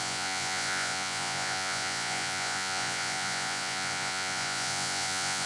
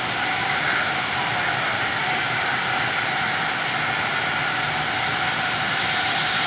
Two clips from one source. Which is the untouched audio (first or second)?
second